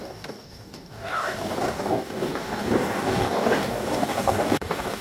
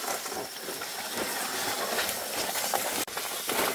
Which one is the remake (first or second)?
first